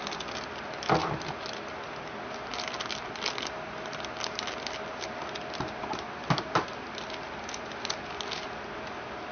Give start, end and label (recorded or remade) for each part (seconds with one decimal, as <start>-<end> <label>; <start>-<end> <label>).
0.0-9.3 recorded